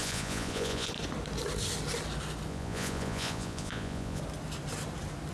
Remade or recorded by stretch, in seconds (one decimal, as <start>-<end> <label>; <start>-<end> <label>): 0.0-0.9 remade; 0.9-2.5 recorded; 2.5-4.2 remade; 4.2-5.3 recorded